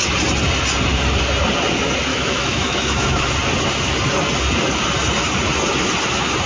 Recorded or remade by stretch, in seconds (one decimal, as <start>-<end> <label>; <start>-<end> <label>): 0.0-2.1 recorded; 2.1-3.3 remade; 3.3-6.5 recorded